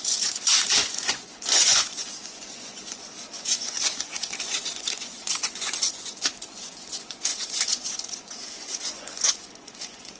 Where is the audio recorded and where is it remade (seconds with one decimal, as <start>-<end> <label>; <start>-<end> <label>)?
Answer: 0.0-10.2 remade